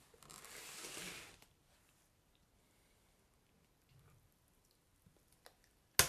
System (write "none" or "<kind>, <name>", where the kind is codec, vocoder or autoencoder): none